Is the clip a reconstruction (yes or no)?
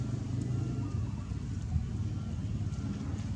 no